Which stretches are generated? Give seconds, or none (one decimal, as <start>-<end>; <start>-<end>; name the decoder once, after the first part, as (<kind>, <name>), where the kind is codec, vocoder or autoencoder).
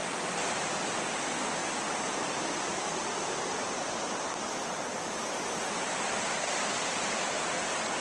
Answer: 1.6-6.4 (vocoder, BigVGAN v2)